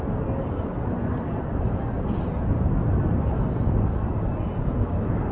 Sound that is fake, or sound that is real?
real